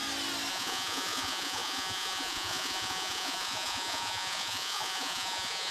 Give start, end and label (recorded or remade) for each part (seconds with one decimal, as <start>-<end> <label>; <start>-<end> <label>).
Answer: 0.0-0.5 recorded; 0.5-5.7 remade